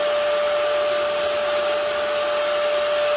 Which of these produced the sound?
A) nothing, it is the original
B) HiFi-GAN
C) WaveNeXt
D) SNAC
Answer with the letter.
A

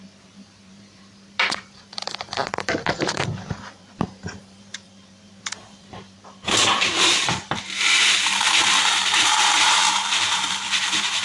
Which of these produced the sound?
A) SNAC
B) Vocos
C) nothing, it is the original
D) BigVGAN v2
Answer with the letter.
D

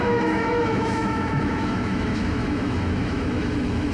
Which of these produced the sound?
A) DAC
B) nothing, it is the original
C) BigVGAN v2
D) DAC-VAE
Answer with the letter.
D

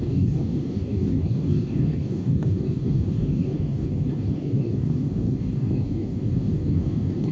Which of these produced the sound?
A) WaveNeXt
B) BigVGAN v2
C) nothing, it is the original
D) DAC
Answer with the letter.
D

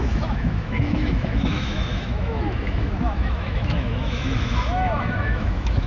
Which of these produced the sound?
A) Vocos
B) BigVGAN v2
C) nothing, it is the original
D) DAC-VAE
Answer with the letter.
D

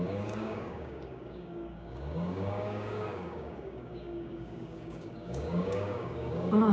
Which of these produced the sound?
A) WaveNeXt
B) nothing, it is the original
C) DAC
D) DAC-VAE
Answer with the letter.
C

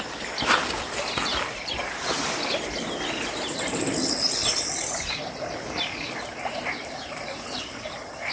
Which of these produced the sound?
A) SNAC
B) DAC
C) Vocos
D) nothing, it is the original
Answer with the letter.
D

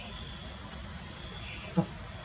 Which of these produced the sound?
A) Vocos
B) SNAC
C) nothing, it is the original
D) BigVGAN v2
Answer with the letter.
C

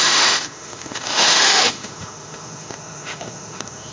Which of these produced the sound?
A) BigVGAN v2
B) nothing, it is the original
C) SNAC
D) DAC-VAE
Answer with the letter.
D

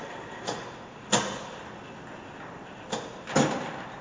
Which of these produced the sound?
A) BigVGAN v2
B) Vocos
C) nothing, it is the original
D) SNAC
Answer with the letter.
C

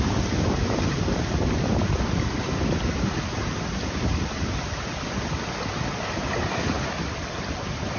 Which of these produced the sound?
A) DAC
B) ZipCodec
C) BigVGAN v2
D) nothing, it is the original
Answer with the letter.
D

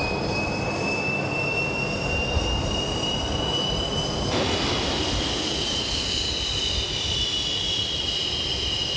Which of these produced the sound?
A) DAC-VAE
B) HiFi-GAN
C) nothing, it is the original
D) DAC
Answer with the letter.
C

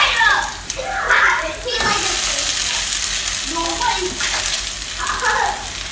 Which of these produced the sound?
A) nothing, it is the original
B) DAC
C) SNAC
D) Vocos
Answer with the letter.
A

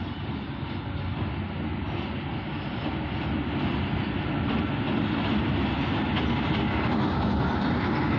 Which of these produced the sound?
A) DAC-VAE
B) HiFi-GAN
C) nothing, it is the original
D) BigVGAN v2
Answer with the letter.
C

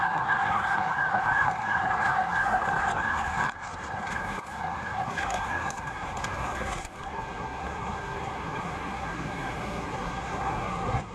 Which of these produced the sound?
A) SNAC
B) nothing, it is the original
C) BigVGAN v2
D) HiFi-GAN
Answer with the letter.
A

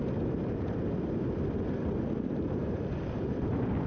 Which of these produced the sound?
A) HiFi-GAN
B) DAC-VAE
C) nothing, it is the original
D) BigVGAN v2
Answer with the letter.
D